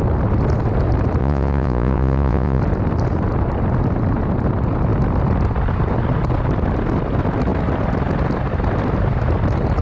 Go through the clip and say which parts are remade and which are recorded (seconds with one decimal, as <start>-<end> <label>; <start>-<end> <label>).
0.0-1.2 recorded; 1.2-2.6 remade; 2.6-9.8 recorded